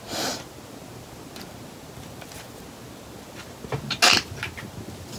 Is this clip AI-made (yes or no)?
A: no